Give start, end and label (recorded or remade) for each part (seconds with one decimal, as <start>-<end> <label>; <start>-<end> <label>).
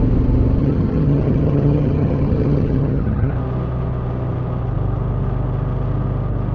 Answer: 0.0-0.6 recorded; 0.6-3.3 remade; 3.3-6.5 recorded